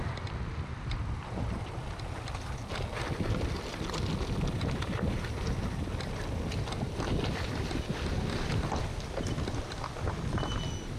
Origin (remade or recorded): recorded